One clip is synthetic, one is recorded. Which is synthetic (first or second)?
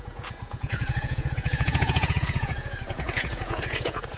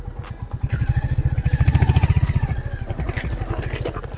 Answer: first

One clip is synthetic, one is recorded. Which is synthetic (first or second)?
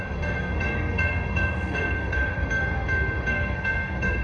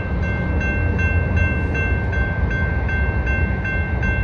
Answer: first